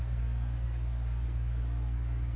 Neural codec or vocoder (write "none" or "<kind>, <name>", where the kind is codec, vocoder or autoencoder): codec, SNAC